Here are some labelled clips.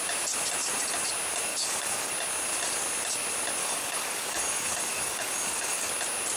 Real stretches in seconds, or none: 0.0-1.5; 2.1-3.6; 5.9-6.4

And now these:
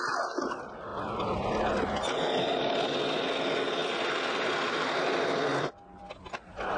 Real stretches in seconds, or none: 0.0-0.9; 1.8-3.8; 5.4-6.8

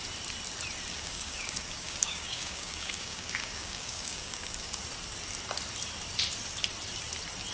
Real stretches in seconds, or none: 0.0-0.9; 4.8-7.5

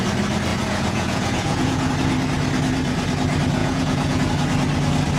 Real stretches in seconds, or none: 0.0-0.5; 1.9-3.6; 4.3-5.2

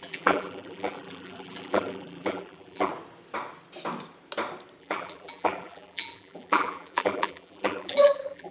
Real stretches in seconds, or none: 2.9-4.8

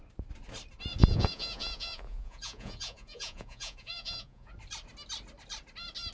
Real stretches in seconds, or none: 0.0-1.0; 4.5-6.1

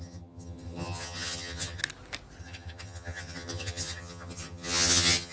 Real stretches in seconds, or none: 1.8-2.4